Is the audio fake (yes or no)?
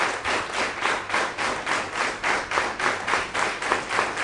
no